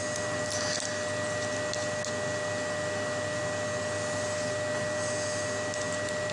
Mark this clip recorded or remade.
recorded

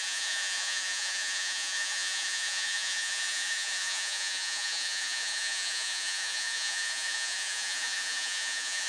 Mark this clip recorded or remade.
remade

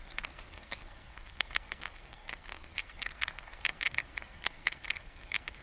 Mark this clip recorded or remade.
remade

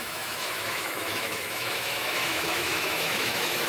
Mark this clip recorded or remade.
remade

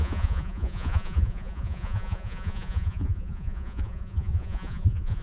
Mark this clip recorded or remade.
remade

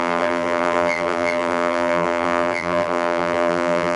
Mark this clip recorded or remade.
remade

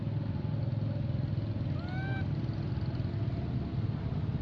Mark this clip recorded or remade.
recorded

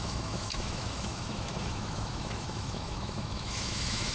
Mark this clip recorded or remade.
remade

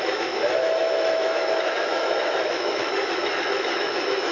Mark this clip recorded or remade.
remade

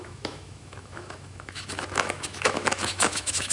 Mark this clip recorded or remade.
remade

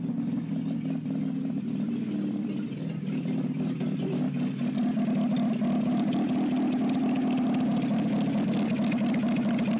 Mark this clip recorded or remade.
recorded